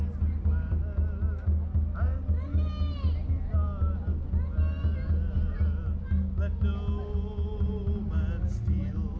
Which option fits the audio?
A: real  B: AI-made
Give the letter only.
A